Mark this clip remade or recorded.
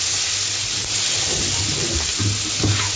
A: recorded